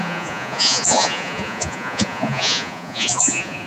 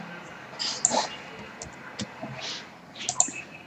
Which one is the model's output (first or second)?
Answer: first